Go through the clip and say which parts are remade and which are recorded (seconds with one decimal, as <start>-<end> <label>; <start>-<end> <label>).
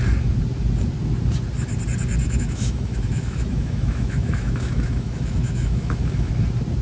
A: 0.0-2.2 recorded; 2.2-6.3 remade; 6.3-6.8 recorded